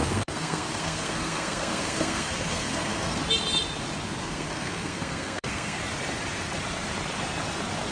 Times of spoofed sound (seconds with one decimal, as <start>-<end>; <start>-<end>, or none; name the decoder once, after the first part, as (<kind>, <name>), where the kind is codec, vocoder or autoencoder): 0.0-3.2 (codec, SNAC); 4.2-5.8